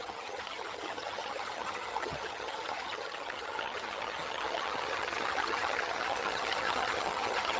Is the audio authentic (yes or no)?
no